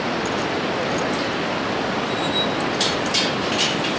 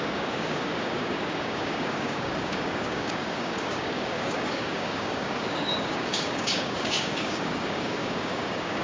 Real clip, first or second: first